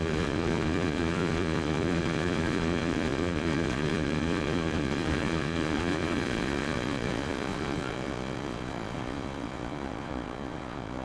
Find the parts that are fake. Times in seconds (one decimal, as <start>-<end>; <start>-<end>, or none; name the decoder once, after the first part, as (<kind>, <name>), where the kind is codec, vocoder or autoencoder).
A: 0.0-11.0 (vocoder, Vocos)

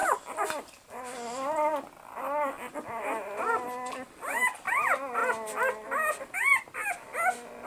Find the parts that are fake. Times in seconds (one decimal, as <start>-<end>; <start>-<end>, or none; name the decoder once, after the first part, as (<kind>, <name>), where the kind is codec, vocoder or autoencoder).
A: none

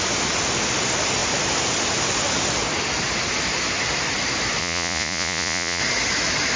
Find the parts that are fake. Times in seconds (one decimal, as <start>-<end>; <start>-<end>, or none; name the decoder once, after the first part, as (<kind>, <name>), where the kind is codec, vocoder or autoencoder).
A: 4.6-5.8 (vocoder, Vocos)

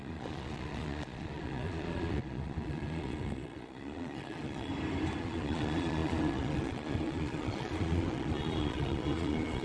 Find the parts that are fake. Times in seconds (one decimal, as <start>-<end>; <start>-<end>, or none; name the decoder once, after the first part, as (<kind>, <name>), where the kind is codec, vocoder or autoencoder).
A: 0.0-4.7 (vocoder, Vocos); 5.2-9.6

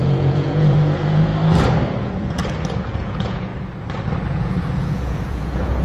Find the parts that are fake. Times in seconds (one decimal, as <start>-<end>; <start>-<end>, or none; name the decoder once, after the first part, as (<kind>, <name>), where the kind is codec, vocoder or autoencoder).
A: 0.0-1.3 (vocoder, Vocos); 2.0-2.4; 3.0-3.5; 4.3-5.8